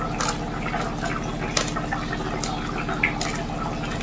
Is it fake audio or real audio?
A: real